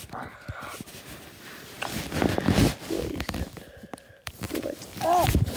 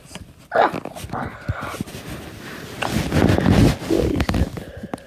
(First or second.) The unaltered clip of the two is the second